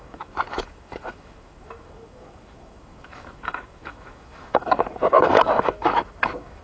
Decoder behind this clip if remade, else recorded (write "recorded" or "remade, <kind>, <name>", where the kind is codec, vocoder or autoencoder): remade, autoencoder, DAC-VAE